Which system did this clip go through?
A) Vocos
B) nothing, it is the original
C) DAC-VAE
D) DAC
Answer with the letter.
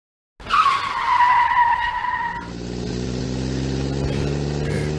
B